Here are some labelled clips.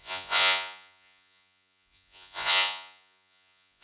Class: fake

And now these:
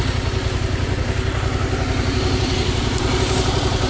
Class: fake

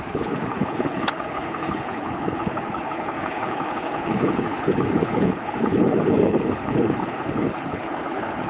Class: fake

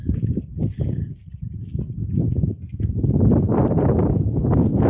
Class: real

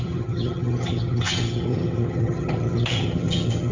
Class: fake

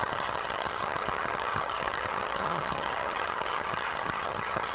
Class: fake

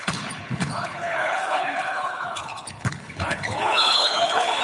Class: fake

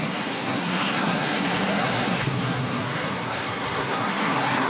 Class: fake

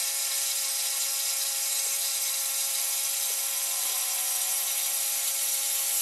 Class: fake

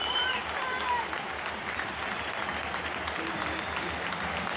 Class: real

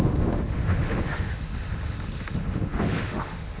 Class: fake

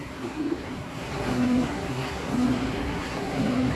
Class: fake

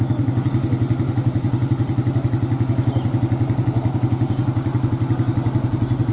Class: real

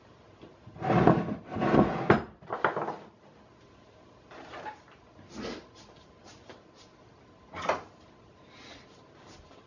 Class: real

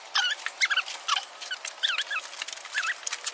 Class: real